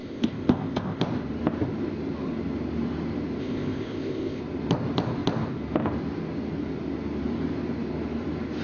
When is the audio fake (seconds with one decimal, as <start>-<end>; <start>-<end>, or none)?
0.0-1.0; 3.4-4.4